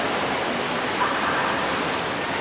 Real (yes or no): yes